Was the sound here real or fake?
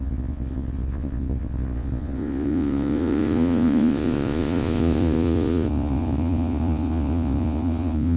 fake